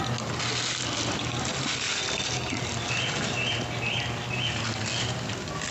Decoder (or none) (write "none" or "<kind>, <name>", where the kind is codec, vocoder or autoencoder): none